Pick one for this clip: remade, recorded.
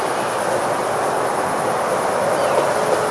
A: recorded